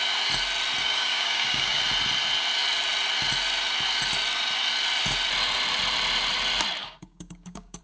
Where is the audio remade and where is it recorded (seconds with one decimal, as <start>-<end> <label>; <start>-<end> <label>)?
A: 0.0-0.8 recorded; 0.8-1.8 remade; 1.8-6.8 recorded; 6.8-7.8 remade